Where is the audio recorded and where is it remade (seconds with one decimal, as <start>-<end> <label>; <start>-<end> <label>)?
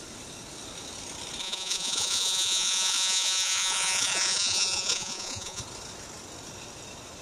0.0-1.4 recorded; 1.4-5.6 remade; 5.6-7.2 recorded